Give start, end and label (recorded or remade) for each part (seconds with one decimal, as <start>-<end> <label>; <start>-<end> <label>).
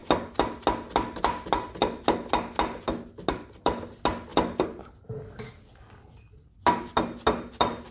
0.0-7.9 recorded